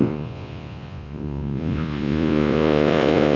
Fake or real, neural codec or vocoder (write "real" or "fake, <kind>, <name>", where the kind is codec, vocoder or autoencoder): fake, vocoder, Vocos